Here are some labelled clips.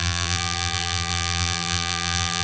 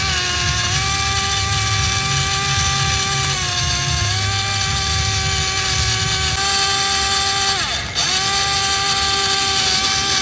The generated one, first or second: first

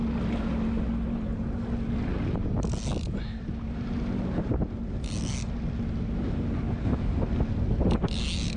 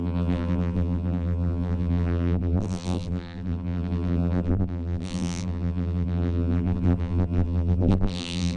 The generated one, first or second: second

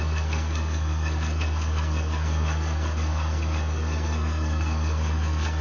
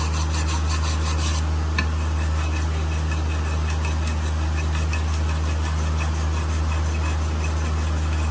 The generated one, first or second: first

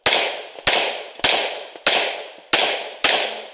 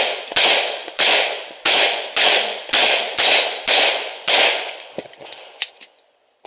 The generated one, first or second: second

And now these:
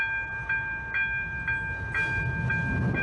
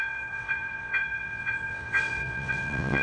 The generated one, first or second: second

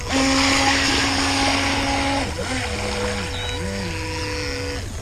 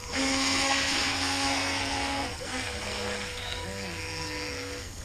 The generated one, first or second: second